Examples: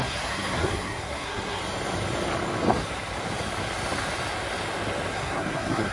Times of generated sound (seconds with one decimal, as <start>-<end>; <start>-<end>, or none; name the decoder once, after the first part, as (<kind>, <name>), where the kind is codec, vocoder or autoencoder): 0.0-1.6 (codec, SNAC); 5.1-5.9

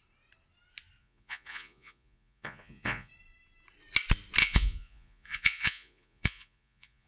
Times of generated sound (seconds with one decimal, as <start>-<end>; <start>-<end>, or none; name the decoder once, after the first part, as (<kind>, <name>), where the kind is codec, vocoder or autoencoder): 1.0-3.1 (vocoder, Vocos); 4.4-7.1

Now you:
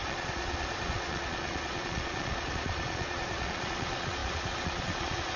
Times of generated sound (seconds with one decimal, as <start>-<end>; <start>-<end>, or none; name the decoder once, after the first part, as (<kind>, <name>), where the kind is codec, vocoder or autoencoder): 0.0-5.4 (vocoder, Vocos)

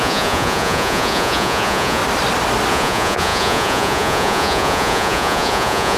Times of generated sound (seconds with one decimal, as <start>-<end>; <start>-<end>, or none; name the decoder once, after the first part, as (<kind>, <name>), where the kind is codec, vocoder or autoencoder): 0.0-2.0 (vocoder, Vocos); 2.7-6.0

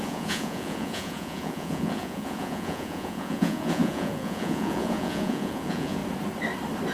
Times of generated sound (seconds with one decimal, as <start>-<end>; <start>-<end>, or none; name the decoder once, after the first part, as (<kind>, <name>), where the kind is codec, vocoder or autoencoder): 0.0-6.0 (vocoder, Vocos)

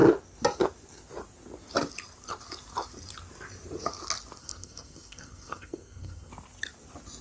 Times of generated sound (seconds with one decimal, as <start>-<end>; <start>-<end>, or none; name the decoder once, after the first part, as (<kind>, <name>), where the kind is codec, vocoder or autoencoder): 4.4-6.3 (codec, SNAC)